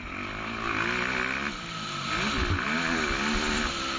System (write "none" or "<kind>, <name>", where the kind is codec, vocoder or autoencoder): none